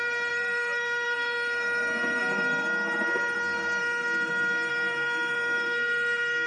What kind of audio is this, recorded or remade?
remade